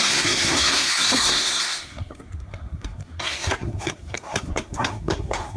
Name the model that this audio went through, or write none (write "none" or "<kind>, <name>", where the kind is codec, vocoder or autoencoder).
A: codec, SNAC